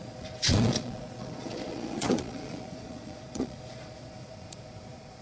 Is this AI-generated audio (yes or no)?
yes